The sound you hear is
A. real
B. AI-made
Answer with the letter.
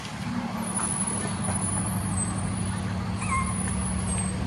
A